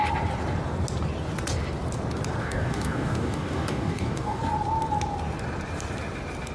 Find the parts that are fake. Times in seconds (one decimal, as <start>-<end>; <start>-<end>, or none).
2.4-4.4